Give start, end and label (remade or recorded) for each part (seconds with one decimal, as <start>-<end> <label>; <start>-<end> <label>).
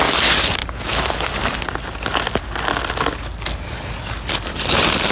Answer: 0.0-5.1 recorded